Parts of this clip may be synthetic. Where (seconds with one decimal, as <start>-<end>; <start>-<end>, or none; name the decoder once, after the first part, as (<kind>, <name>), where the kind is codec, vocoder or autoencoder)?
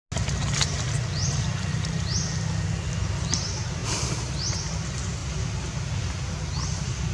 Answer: 5.2-5.9 (vocoder, BigVGAN v2)